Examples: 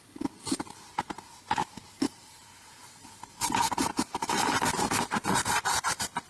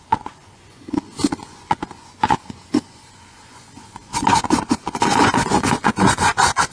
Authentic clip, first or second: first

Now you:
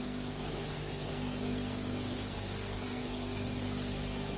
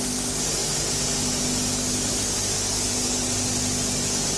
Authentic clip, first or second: second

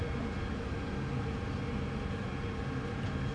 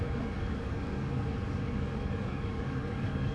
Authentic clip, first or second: first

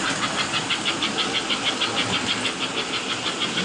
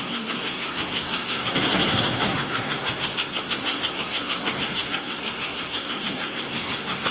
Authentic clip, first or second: first